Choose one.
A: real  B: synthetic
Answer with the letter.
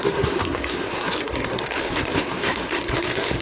B